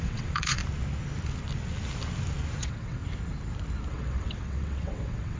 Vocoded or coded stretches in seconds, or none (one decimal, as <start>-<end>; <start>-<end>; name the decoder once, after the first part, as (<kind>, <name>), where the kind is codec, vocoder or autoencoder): 0.0-0.6 (vocoder, WaveNeXt); 2.6-3.0; 3.9-5.4